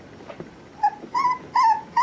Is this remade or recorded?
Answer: recorded